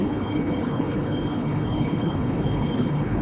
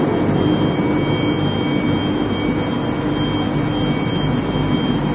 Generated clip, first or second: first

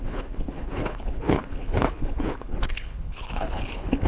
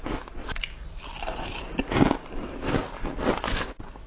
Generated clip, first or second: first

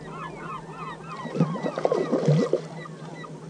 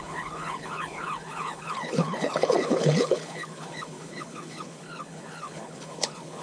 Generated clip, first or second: second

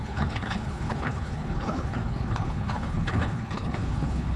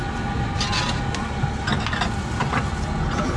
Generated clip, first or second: first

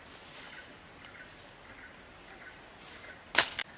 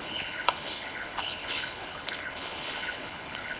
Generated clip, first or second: second